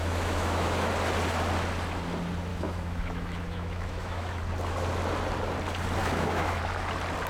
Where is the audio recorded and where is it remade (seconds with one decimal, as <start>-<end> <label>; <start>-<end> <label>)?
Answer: 0.0-0.9 remade; 0.9-2.5 recorded; 2.5-4.4 remade; 4.4-6.0 recorded; 6.0-6.6 remade; 6.6-7.3 recorded